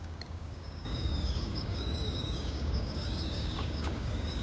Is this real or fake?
fake